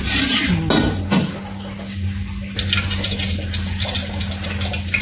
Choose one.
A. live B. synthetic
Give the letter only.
A